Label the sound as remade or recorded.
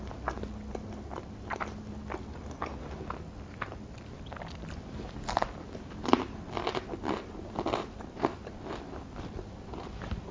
recorded